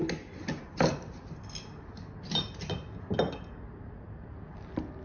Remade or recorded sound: recorded